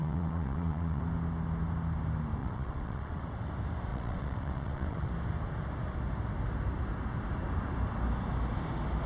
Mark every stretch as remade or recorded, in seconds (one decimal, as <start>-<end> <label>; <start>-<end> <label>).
0.0-1.0 remade; 1.0-2.4 recorded; 2.4-3.2 remade; 3.2-3.9 recorded; 3.9-5.1 remade; 5.1-9.1 recorded